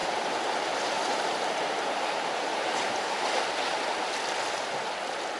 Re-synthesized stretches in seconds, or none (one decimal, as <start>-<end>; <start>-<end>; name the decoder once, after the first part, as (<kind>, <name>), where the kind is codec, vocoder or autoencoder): 0.0-3.2 (vocoder, BigVGAN v2)

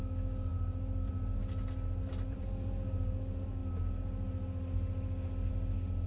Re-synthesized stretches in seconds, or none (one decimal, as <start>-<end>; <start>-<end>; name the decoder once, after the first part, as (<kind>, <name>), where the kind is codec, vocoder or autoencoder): 0.5-1.1 (vocoder, BigVGAN v2); 2.1-2.9

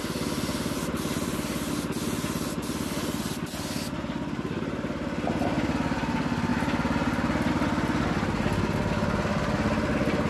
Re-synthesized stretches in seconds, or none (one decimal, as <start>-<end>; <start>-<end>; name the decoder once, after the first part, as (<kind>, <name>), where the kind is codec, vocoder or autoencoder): none